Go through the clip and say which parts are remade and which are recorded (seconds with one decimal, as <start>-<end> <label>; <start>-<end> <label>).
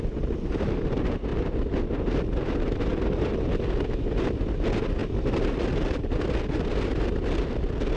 0.0-2.9 recorded; 2.9-4.4 remade; 4.4-5.0 recorded; 5.0-8.0 remade